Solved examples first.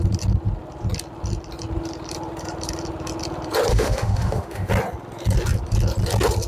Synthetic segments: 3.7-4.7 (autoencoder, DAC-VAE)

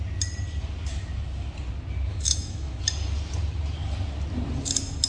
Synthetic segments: 2.1-2.8 (autoencoder, DAC-VAE)

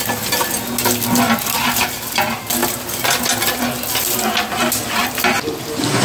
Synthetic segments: none

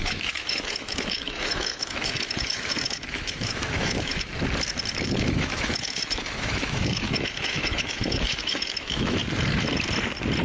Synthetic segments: 0.0-4.3 (autoencoder, DAC-VAE); 4.9-9.2

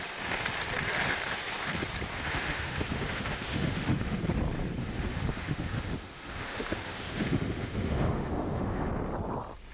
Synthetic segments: 2.1-4.2 (autoencoder, DAC-VAE); 4.8-8.9